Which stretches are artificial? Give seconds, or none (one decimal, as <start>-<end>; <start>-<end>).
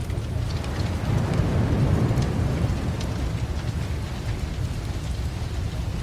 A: none